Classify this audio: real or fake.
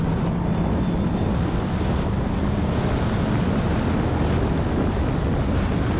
real